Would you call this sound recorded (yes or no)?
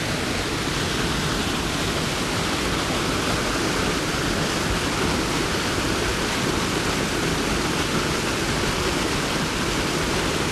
yes